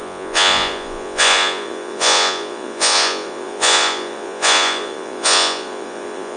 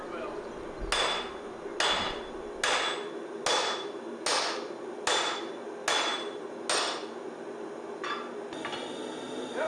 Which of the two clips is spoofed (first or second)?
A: first